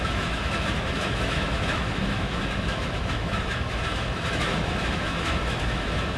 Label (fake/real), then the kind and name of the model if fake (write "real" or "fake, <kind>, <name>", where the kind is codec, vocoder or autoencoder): fake, autoencoder, DAC-VAE